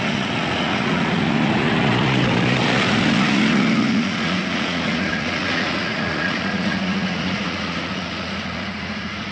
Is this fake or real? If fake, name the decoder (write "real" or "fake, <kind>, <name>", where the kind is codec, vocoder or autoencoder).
fake, vocoder, Vocos